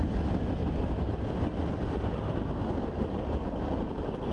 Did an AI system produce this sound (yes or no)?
no